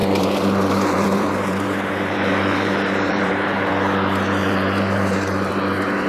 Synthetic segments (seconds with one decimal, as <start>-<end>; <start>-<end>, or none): 0.0-3.7; 4.4-5.5

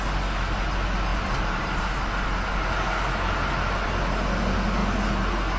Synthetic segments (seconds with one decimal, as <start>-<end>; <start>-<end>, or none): 1.1-1.8

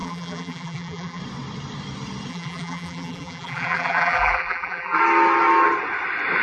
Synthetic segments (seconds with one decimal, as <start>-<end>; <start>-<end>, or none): 0.0-1.2; 2.3-5.0